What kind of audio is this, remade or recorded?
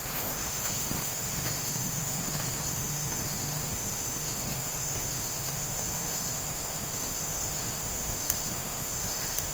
remade